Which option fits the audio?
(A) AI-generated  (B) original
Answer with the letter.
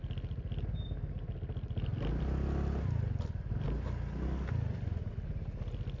B